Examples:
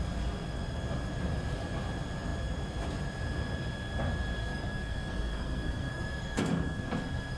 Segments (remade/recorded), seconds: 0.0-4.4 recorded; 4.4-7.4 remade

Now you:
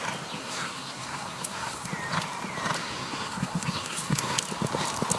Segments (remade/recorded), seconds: 0.0-0.4 recorded; 0.4-1.9 remade; 1.9-2.8 recorded; 2.8-4.4 remade; 4.4-5.2 recorded